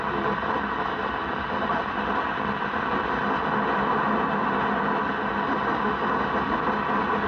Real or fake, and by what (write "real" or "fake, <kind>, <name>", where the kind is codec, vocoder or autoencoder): real